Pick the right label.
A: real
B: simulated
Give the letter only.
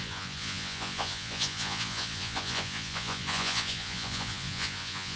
B